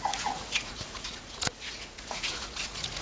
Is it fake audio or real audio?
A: fake